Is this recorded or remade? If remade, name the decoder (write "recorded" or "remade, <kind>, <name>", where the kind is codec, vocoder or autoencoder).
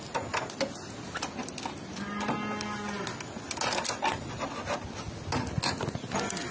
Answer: recorded